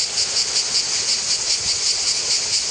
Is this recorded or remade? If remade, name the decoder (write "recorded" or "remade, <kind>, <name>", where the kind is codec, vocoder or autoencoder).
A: recorded